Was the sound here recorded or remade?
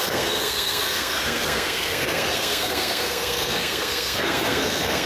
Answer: remade